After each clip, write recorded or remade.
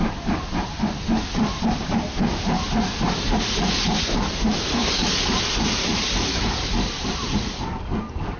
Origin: remade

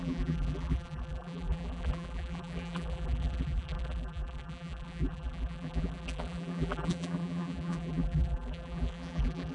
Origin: remade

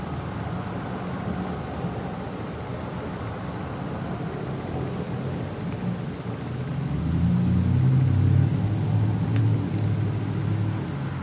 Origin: recorded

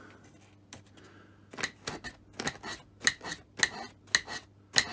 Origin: recorded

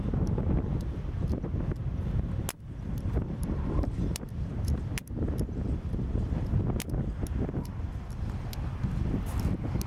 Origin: recorded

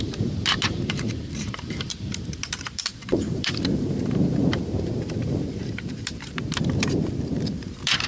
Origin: remade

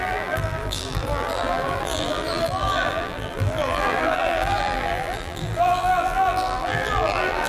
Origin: remade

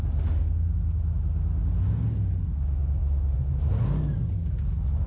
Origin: recorded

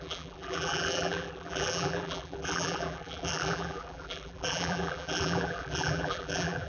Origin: remade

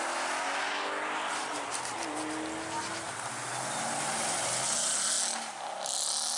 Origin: recorded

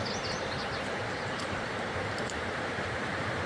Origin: remade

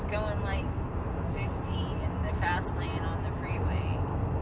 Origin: recorded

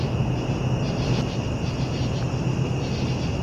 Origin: recorded